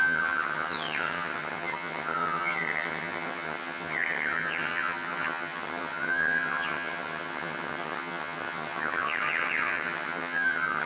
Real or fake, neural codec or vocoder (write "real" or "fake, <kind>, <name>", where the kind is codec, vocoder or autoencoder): fake, vocoder, HiFi-GAN